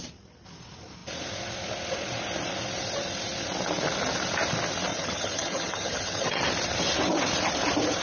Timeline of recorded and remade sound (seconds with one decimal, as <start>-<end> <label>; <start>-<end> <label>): 0.0-4.9 recorded; 4.9-6.4 remade; 6.4-8.0 recorded